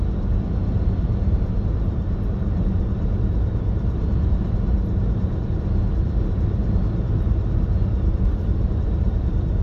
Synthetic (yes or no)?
yes